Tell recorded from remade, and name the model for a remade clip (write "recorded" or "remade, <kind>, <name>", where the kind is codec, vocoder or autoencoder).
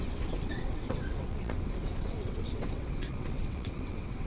remade, vocoder, WaveNeXt